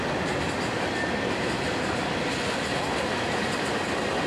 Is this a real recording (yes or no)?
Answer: yes